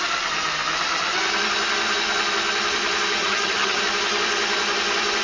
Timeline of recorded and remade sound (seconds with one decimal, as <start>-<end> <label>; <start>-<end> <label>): 0.0-3.2 recorded; 3.2-3.8 remade; 3.8-5.2 recorded